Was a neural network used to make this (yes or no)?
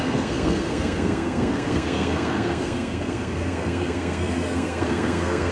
yes